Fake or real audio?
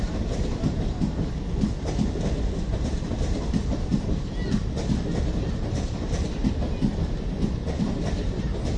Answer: real